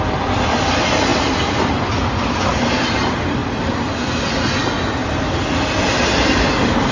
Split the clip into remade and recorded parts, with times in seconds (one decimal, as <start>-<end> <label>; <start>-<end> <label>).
0.0-6.9 recorded